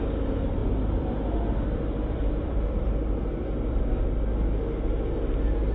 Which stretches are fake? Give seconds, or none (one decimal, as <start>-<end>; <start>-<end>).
0.6-4.0